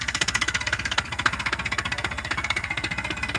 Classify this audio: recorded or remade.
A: remade